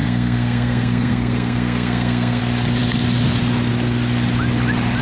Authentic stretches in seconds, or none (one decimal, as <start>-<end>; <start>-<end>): 2.4-5.0